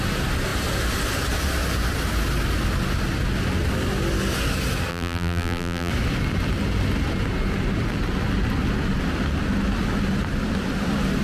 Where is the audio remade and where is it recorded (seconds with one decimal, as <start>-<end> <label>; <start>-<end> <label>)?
0.0-4.9 recorded; 4.9-5.9 remade; 5.9-11.2 recorded